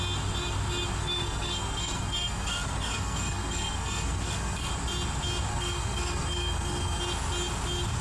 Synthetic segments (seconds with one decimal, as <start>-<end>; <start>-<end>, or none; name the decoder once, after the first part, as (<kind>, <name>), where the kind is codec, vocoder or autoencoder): 1.0-4.7 (codec, SNAC); 5.5-7.0